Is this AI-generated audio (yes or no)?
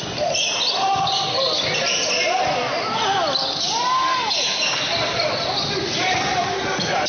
no